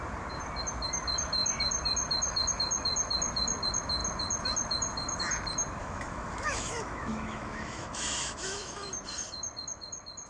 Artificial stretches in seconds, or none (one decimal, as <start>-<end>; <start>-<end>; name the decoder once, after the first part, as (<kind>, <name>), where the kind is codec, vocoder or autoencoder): 5.8-8.9 (autoencoder, DAC-VAE)